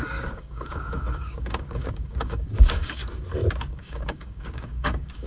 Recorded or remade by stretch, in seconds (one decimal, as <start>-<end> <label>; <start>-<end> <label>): 0.0-3.0 remade; 3.0-3.7 recorded; 3.7-5.3 remade